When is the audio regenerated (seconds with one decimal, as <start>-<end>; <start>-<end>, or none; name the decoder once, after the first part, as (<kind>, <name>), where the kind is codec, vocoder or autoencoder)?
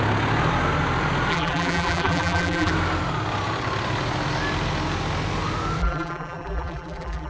1.3-2.7 (vocoder, BigVGAN v2); 5.8-7.3